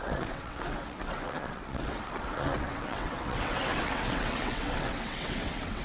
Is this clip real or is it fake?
fake